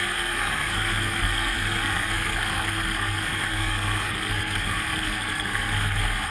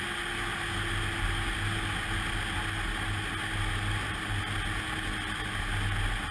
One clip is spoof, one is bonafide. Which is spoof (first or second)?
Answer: first